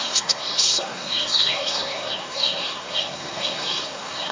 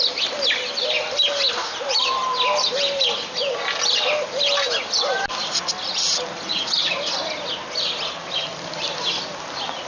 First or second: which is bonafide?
second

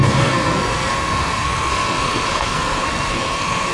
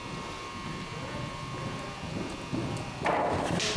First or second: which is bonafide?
second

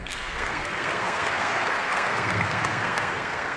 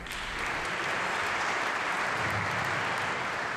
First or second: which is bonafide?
second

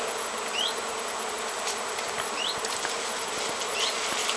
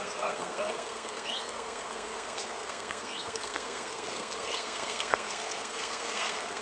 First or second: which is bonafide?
first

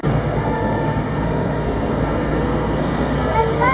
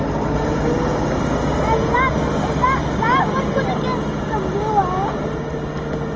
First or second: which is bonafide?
second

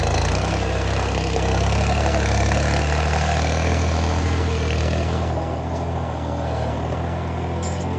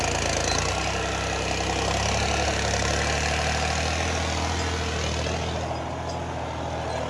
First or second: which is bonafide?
second